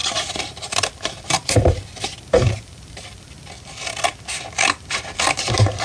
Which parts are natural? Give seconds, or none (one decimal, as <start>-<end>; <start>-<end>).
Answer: 3.5-5.8